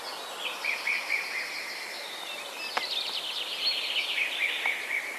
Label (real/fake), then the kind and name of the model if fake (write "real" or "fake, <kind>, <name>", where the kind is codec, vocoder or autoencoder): real